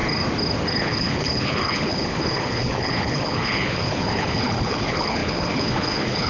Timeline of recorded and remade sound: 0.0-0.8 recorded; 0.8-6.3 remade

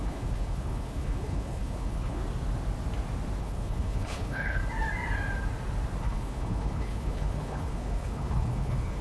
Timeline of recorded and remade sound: 0.0-2.2 remade; 2.2-3.4 recorded; 3.4-4.6 remade; 4.6-6.0 recorded; 6.0-9.0 remade